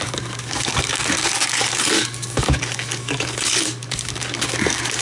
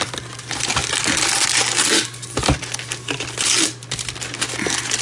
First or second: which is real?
second